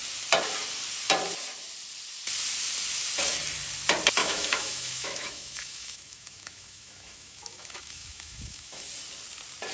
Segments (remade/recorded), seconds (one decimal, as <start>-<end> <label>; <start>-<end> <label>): 0.0-4.2 recorded; 4.2-8.8 remade; 8.8-9.7 recorded